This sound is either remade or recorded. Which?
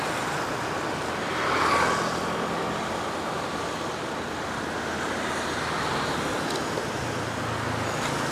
recorded